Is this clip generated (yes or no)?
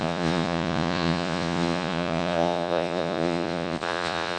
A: yes